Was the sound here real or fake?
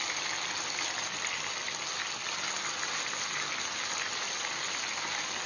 real